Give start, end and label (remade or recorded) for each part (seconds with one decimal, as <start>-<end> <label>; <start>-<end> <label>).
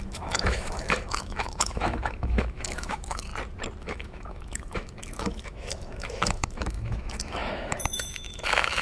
0.0-3.3 remade; 3.3-3.8 recorded; 3.8-8.8 remade